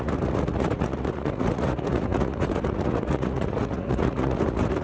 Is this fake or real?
fake